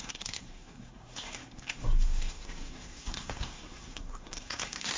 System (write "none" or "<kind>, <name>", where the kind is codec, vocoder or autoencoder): codec, SNAC